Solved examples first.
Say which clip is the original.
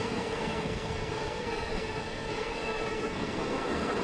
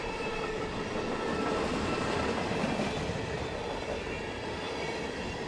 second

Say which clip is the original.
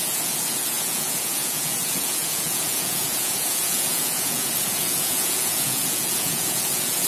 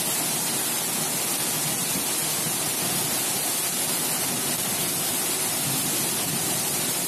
second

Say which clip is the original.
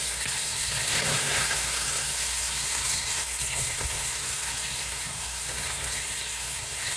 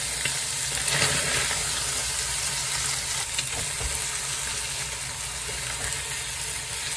second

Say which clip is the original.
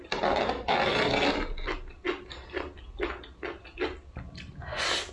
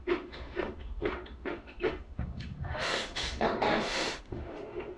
first